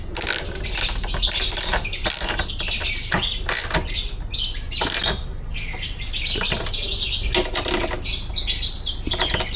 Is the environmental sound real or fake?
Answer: real